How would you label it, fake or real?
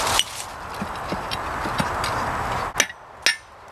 real